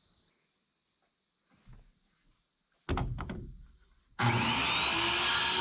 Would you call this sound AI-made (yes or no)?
no